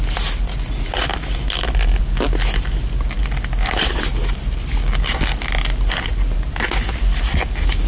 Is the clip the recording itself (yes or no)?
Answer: yes